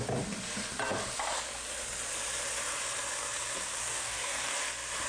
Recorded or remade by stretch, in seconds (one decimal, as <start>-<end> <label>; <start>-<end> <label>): 0.0-3.8 recorded; 3.8-4.6 remade; 4.6-5.1 recorded